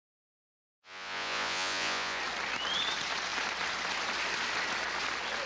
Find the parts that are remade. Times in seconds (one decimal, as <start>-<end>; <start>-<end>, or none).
0.5-2.2